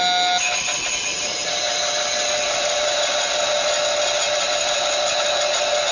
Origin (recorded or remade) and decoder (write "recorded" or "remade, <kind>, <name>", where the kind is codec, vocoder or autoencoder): recorded